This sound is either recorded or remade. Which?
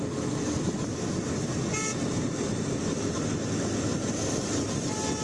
recorded